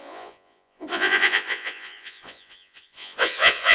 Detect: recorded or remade remade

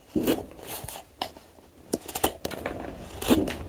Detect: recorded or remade recorded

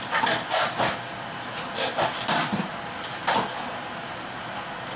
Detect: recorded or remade recorded